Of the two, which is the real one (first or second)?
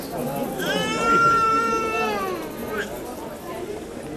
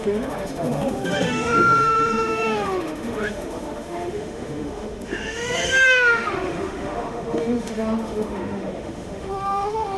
first